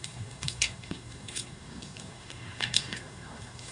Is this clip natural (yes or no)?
no